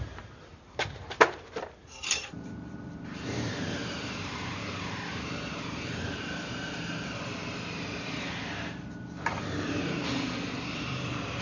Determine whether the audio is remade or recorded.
remade